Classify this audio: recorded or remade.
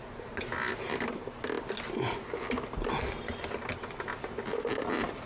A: recorded